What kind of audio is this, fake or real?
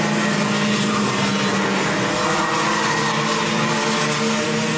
real